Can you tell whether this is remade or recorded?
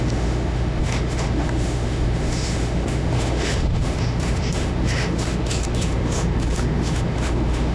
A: remade